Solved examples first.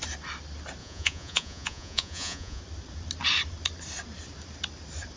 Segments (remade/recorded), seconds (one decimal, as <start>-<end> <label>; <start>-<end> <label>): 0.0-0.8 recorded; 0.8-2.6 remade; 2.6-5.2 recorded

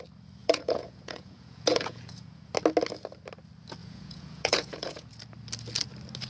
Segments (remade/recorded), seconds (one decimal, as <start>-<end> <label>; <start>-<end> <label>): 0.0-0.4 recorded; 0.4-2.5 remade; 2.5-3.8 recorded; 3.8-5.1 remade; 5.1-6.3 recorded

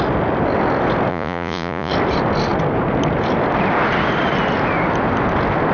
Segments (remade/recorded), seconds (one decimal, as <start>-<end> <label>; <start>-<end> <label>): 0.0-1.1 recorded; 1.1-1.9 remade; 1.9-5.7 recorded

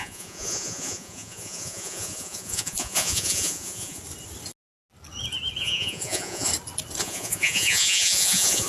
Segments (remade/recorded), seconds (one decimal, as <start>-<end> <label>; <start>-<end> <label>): 0.0-4.0 remade; 4.0-5.6 recorded; 5.6-6.5 remade; 6.5-7.0 recorded; 7.0-8.7 remade

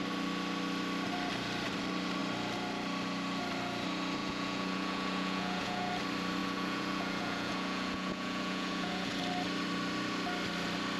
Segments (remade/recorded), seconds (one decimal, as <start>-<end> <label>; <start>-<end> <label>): 0.0-4.2 recorded; 4.2-5.9 remade; 5.9-6.4 recorded; 6.4-9.2 remade; 9.2-11.0 recorded

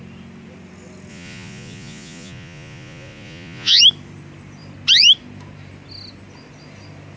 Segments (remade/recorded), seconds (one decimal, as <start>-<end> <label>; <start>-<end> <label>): 0.0-1.1 recorded; 1.1-3.8 remade; 3.8-7.2 recorded

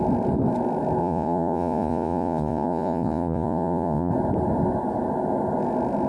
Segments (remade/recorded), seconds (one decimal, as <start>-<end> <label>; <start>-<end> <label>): 0.0-1.0 recorded; 1.0-4.1 remade; 4.1-6.1 recorded